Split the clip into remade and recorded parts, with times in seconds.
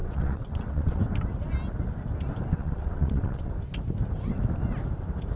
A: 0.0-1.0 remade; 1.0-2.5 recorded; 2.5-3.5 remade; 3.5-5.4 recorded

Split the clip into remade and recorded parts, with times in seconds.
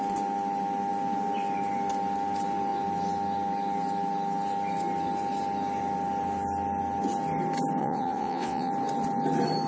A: 0.0-7.8 recorded; 7.8-8.7 remade; 8.7-9.7 recorded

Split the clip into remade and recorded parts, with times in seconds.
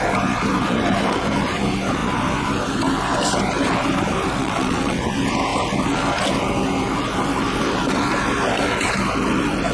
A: 0.0-4.4 recorded; 4.4-5.0 remade; 5.0-9.7 recorded